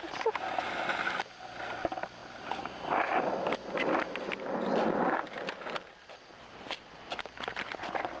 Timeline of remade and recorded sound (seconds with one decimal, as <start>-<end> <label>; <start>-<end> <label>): 0.0-8.2 recorded